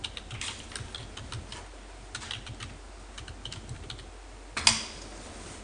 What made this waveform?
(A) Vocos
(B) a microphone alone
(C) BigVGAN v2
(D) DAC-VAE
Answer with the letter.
B